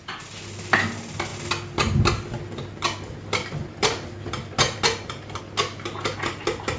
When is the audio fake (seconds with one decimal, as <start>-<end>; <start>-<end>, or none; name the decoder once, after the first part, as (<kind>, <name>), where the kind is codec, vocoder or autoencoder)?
none